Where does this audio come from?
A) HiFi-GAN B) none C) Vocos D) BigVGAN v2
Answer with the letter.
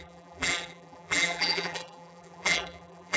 D